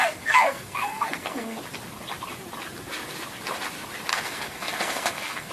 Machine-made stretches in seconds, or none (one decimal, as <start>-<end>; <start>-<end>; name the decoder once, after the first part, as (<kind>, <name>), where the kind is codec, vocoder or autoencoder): 0.0-1.6 (codec, SNAC); 4.1-5.5